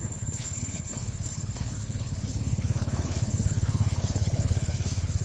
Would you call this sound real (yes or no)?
no